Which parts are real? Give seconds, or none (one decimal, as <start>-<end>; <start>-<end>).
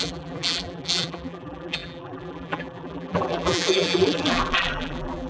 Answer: none